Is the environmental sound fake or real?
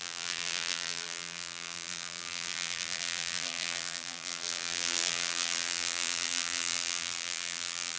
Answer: fake